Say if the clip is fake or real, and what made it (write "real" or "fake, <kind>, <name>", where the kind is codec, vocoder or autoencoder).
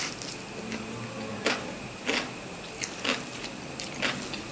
real